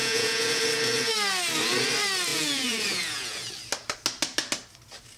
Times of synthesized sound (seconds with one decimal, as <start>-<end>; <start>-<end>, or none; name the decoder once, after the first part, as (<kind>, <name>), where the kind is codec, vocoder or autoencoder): 0.0-0.6 (vocoder, Vocos); 2.3-3.5

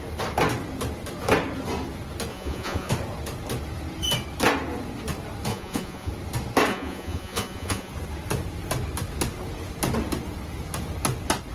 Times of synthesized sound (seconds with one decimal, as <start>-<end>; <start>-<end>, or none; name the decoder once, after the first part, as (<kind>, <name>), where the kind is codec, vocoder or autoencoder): 2.3-2.9 (vocoder, Vocos); 5.5-6.1; 6.7-7.9

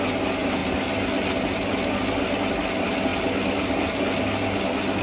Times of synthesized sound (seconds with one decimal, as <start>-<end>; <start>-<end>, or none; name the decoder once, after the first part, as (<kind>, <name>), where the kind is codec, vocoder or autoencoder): none

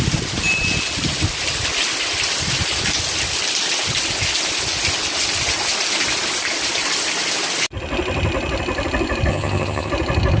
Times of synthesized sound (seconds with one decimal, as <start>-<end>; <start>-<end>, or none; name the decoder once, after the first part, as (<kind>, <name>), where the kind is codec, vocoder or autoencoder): 9.3-9.9 (vocoder, HiFi-GAN)

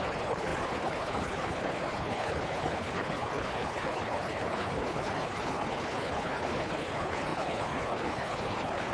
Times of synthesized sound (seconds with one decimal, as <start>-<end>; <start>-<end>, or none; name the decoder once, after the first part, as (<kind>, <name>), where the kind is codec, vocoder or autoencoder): 0.0-8.9 (codec, HILCodec)

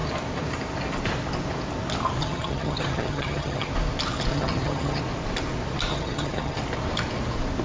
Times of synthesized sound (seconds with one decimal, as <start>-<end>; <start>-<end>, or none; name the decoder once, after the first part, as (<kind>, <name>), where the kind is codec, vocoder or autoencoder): 2.2-3.7 (vocoder, HiFi-GAN); 4.3-5.0; 5.9-6.6

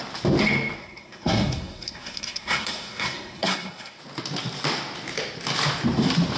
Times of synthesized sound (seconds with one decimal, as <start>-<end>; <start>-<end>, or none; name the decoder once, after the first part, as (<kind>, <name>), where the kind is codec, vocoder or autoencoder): 0.8-4.0 (codec, SNAC)